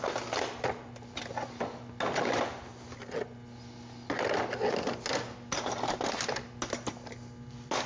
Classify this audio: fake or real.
real